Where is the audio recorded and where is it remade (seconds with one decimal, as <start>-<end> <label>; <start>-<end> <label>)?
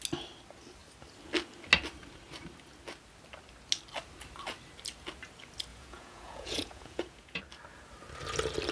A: 0.0-5.7 recorded; 5.7-7.4 remade; 7.4-8.7 recorded